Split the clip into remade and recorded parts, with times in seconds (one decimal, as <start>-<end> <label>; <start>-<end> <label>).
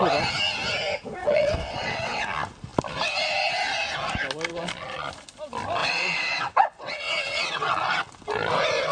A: 0.0-1.2 recorded; 1.2-2.2 remade; 2.2-5.8 recorded; 5.8-7.7 remade; 7.7-8.9 recorded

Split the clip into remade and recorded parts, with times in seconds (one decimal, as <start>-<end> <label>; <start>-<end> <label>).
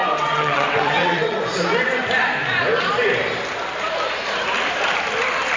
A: 0.0-1.4 remade; 1.4-5.6 recorded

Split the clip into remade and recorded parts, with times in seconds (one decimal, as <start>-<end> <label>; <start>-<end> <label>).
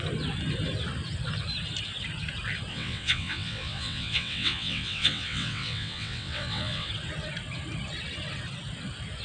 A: 0.0-2.7 recorded; 2.7-6.9 remade; 6.9-9.2 recorded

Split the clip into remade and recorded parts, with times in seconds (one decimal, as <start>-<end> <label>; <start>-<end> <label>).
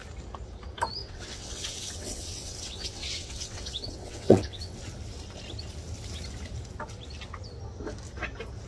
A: 0.0-1.0 recorded; 1.0-4.8 remade; 4.8-8.7 recorded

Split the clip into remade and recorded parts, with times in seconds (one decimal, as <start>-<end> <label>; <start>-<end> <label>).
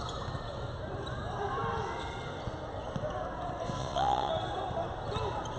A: 0.0-3.8 recorded; 3.8-4.3 remade; 4.3-5.6 recorded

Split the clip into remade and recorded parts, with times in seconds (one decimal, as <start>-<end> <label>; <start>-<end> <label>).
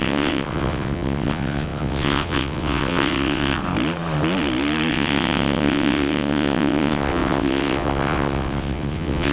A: 0.0-3.6 remade; 3.6-4.9 recorded; 4.9-9.3 remade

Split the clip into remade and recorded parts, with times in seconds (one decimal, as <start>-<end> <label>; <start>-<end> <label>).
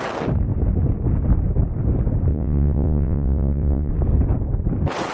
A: 0.0-2.3 recorded; 2.3-3.9 remade; 3.9-5.1 recorded